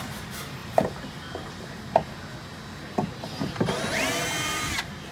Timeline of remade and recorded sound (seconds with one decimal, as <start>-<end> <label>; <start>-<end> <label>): 0.0-5.1 recorded